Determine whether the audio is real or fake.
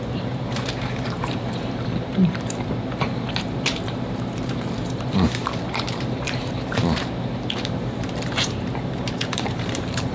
fake